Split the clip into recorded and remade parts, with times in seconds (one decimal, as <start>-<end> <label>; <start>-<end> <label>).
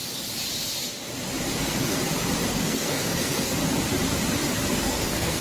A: 0.0-1.6 recorded; 1.6-2.0 remade; 2.0-2.5 recorded; 2.5-3.6 remade; 3.6-4.8 recorded; 4.8-5.4 remade